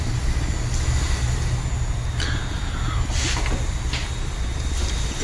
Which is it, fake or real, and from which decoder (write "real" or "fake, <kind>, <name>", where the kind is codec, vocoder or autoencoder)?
real